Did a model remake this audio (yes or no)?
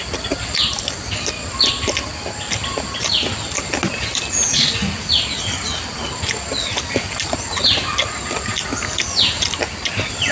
no